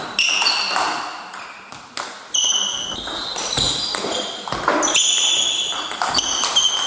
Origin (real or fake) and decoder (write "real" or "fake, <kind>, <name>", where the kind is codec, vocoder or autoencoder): real